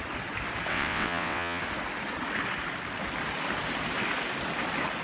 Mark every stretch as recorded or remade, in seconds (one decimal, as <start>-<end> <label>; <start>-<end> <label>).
0.0-0.7 recorded; 0.7-1.6 remade; 1.6-5.0 recorded

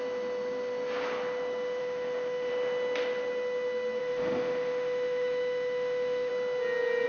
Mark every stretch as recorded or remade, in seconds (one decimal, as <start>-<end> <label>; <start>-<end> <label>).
0.0-1.8 recorded; 1.8-2.5 remade; 2.5-4.0 recorded; 4.0-6.3 remade; 6.3-7.1 recorded

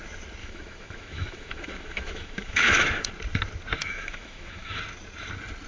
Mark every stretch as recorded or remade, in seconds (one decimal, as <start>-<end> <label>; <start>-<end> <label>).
0.0-0.4 recorded; 0.4-3.1 remade; 3.1-3.8 recorded; 3.8-4.8 remade; 4.8-5.7 recorded